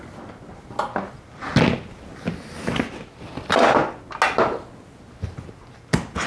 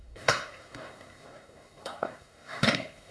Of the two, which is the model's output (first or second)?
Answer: second